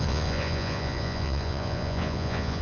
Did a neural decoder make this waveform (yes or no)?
yes